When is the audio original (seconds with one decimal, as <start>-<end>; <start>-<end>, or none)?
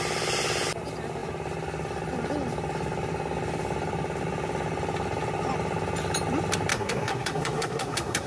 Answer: 0.0-6.7